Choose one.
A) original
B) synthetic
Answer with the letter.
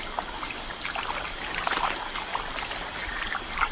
A